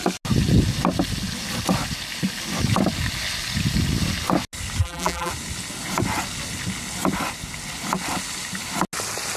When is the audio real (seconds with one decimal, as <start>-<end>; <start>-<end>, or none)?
0.0-4.8; 5.3-9.4